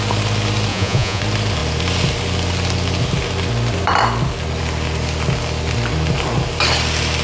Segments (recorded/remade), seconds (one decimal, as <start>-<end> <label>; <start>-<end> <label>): 0.0-0.7 recorded; 0.7-1.2 remade; 1.2-7.2 recorded